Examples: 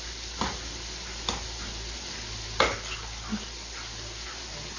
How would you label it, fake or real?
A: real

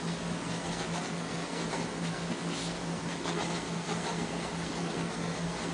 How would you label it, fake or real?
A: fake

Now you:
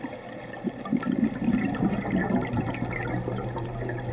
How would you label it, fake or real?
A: real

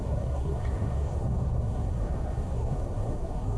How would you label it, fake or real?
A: fake